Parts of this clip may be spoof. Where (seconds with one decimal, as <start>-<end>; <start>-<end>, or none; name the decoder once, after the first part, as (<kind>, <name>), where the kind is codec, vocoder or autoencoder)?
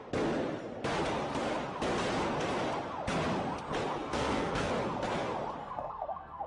4.0-4.7 (codec, SNAC); 5.6-6.5